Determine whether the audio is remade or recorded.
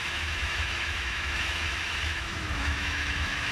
remade